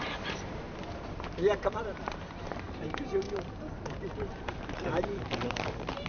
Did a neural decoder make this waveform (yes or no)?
yes